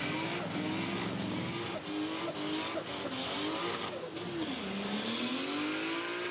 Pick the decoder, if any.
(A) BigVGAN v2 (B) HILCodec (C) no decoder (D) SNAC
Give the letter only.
C